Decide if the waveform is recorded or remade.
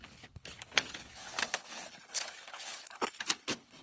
remade